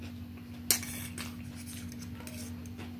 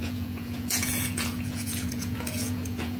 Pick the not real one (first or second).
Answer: second